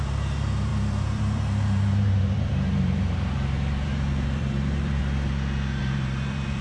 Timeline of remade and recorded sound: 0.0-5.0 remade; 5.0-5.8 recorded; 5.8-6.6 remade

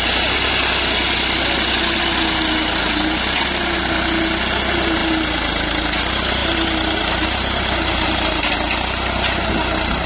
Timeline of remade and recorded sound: 0.0-6.4 recorded; 6.4-8.5 remade; 8.5-10.1 recorded

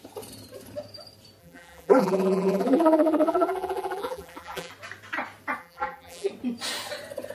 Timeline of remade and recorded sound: 0.0-1.4 recorded; 1.4-4.7 remade; 4.7-5.6 recorded; 5.6-6.3 remade; 6.3-7.3 recorded

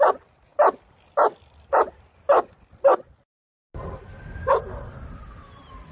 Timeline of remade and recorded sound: 0.0-0.5 remade; 0.5-4.0 recorded; 4.0-5.9 remade

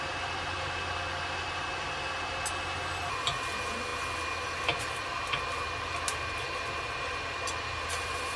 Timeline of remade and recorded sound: 0.0-8.4 recorded

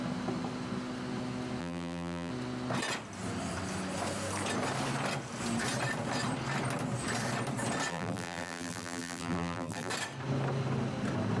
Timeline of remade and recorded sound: 0.0-1.6 recorded; 1.6-2.3 remade; 2.3-7.9 recorded; 7.9-9.9 remade; 9.9-11.4 recorded